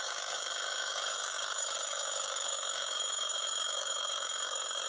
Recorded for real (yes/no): no